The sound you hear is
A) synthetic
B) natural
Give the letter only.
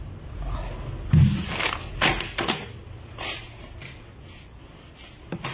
B